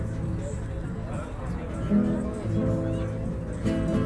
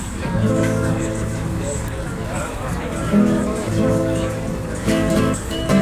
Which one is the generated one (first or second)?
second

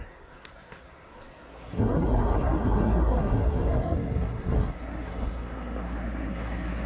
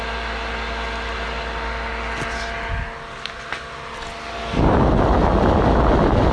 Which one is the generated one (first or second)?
first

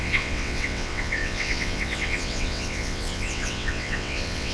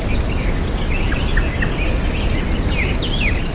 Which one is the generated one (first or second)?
first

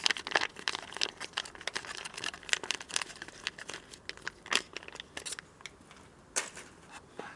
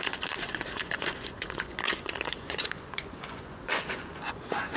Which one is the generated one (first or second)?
second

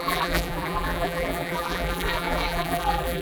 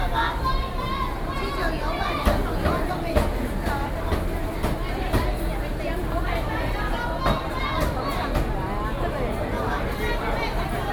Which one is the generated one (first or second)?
first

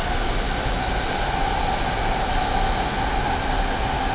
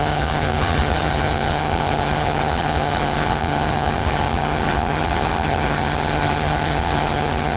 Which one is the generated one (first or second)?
second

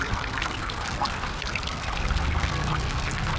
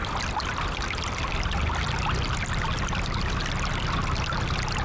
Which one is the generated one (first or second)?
first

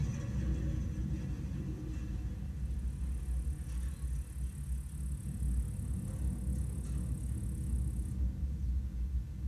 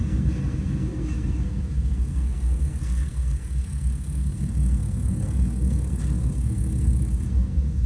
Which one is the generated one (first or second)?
second